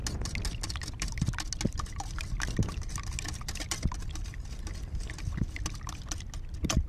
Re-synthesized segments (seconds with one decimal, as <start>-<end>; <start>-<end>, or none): none